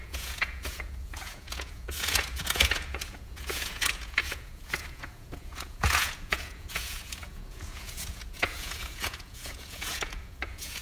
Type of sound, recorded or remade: remade